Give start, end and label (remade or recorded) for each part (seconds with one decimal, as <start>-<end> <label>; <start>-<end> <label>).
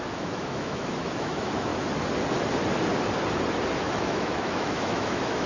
0.0-1.7 remade; 1.7-3.8 recorded; 3.8-5.5 remade